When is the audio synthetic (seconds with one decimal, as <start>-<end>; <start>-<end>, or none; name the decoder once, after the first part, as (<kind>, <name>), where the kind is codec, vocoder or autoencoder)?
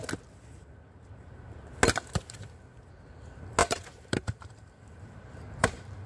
3.6-6.1 (vocoder, BigVGAN v2)